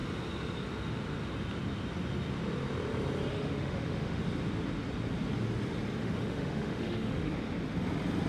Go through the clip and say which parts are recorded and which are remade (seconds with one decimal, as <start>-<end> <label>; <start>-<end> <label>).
0.0-3.3 recorded; 3.3-4.2 remade; 4.2-6.0 recorded; 6.0-7.3 remade; 7.3-8.3 recorded